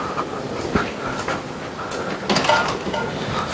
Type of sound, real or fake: real